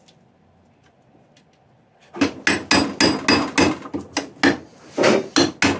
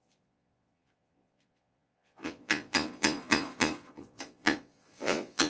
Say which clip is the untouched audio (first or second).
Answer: first